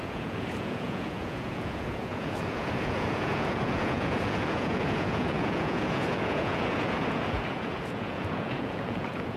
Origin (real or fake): fake